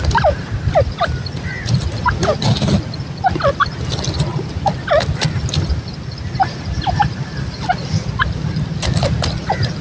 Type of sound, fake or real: real